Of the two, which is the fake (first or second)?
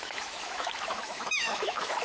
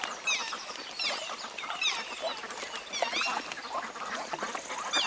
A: first